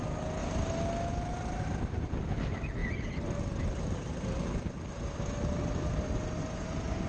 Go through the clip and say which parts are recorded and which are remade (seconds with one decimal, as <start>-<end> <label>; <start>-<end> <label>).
0.0-7.1 recorded